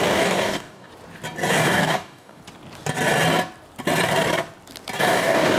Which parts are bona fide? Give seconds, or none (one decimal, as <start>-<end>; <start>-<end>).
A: 0.9-1.5; 2.4-5.0